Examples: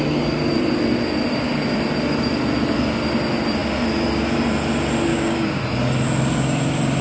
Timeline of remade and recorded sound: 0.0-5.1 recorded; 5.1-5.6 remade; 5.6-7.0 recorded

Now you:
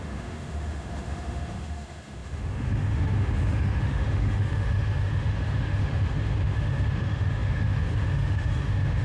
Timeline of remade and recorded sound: 0.0-9.0 remade

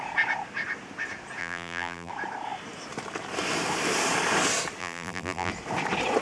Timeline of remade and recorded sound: 0.0-1.4 recorded; 1.4-2.1 remade; 2.1-4.8 recorded; 4.8-5.5 remade; 5.5-6.2 recorded

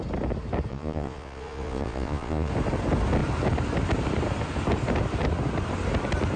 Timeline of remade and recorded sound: 0.0-0.7 recorded; 0.7-2.5 remade; 2.5-6.4 recorded